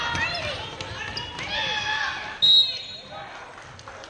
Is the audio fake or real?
real